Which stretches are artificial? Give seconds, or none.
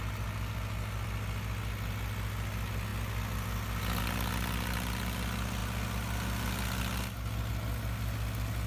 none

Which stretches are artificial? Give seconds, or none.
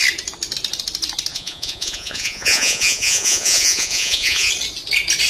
1.3-4.5 (vocoder, Vocos)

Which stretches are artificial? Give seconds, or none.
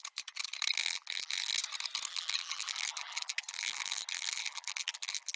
0.8-1.5 (vocoder, BigVGAN v2); 2.1-5.4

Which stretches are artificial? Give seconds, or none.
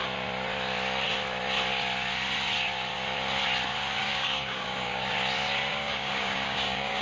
4.0-5.1 (codec, DAC); 5.7-7.0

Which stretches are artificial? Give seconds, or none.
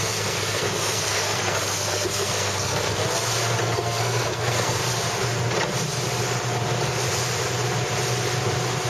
0.0-3.0 (codec, SNAC); 3.6-4.8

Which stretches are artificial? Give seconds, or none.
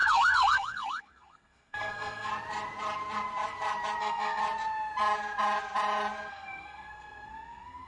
0.0-2.3 (codec, SNAC); 4.0-4.4; 6.3-7.9